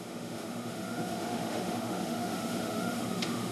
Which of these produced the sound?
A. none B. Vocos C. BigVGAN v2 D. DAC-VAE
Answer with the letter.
D